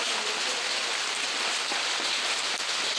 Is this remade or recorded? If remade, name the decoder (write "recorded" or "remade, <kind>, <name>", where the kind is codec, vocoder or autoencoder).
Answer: recorded